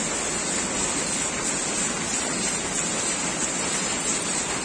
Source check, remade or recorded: recorded